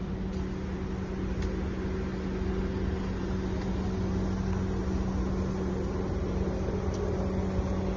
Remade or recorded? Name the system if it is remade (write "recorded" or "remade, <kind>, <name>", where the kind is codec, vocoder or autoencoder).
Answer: recorded